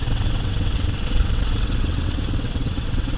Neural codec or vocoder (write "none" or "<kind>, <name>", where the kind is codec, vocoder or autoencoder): vocoder, WaveNeXt